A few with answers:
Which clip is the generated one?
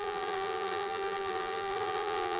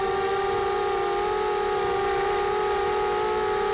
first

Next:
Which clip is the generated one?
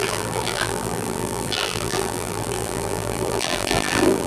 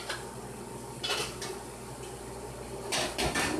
first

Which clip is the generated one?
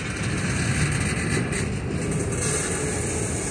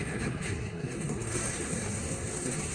second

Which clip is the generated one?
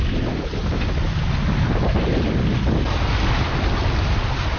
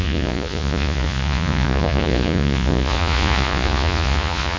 second